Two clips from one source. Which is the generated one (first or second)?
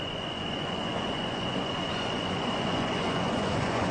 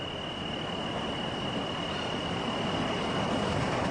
first